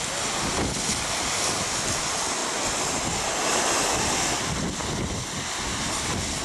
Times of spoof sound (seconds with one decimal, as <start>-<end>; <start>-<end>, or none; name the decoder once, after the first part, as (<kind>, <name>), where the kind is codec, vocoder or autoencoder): none